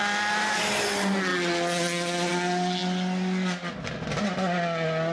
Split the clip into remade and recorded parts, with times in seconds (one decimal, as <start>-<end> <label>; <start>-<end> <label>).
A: 0.0-5.1 recorded